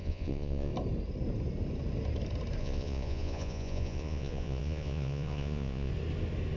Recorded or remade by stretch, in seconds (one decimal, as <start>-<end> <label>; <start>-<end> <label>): 0.0-0.7 remade; 0.7-2.6 recorded; 2.6-5.9 remade; 5.9-6.6 recorded